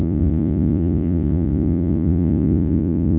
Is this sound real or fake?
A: fake